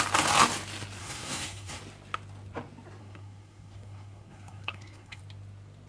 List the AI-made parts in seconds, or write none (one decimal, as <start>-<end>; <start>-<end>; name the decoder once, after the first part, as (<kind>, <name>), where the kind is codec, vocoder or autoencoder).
1.0-1.8 (codec, SNAC); 3.0-5.2